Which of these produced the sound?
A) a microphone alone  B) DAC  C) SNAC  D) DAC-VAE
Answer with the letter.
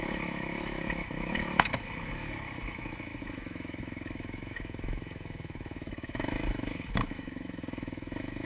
D